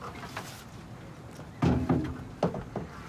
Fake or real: real